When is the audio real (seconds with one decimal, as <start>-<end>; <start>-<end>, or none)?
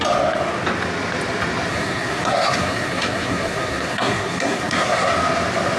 0.0-1.7; 5.1-5.8